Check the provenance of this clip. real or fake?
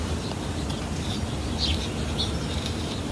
real